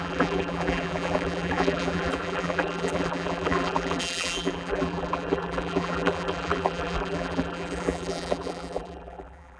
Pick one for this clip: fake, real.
fake